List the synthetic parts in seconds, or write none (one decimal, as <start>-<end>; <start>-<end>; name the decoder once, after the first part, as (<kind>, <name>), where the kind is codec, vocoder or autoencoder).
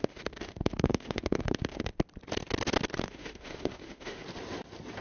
0.0-1.9 (autoencoder, DAC-VAE); 3.0-4.2